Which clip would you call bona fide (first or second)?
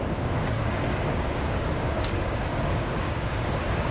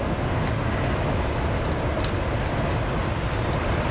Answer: second